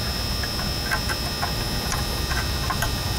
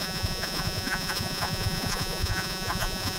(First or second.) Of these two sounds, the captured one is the first